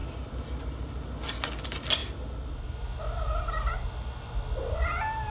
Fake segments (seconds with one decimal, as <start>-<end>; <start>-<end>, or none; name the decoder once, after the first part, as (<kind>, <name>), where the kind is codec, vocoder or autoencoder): none